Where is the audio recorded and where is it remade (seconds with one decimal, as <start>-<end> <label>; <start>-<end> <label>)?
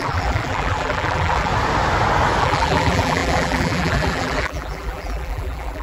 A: 0.0-1.5 remade; 1.5-2.4 recorded; 2.4-5.8 remade